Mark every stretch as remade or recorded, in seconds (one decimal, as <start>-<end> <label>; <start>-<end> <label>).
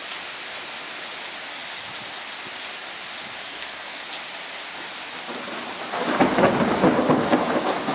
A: 0.0-3.4 recorded; 3.4-4.0 remade; 4.0-7.9 recorded